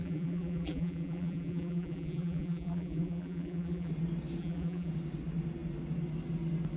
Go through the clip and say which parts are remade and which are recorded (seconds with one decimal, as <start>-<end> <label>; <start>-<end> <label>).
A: 0.0-3.9 remade; 3.9-4.4 recorded; 4.4-4.9 remade; 4.9-6.8 recorded